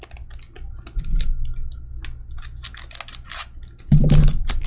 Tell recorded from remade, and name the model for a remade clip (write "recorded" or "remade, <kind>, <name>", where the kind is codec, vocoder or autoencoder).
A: recorded